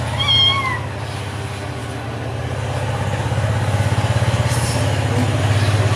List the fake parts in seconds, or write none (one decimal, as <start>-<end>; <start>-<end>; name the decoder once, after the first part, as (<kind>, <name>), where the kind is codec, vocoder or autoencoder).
none